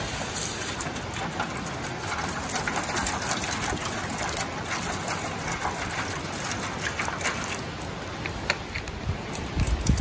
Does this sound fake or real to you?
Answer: real